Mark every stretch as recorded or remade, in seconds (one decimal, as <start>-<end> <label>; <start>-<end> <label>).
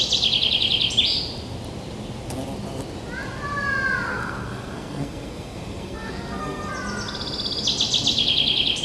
0.0-4.1 recorded; 4.1-6.7 remade; 6.7-8.8 recorded